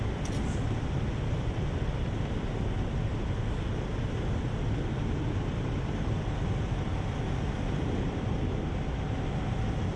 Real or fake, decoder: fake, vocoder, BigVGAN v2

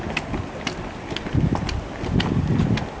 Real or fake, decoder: real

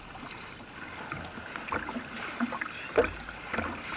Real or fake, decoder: real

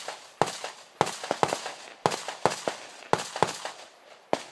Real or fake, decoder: real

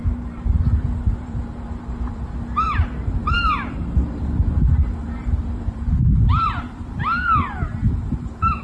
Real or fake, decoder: fake, vocoder, BigVGAN v2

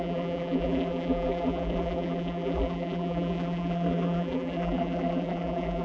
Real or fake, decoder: fake, vocoder, BigVGAN v2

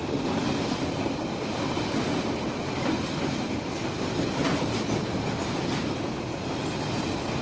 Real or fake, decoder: real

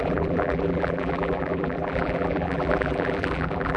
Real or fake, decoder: fake, vocoder, BigVGAN v2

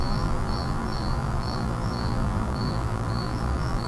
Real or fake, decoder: fake, vocoder, BigVGAN v2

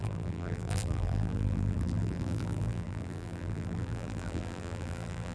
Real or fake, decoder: fake, vocoder, BigVGAN v2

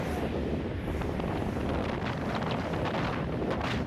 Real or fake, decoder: fake, vocoder, BigVGAN v2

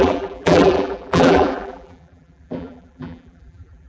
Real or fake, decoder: fake, vocoder, BigVGAN v2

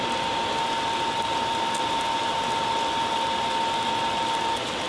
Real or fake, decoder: real